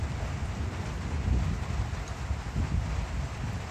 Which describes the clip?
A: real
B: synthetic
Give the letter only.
A